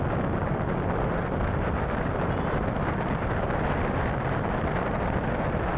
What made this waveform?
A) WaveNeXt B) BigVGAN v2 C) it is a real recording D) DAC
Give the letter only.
C